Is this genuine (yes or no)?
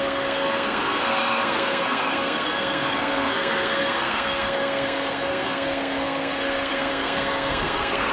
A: no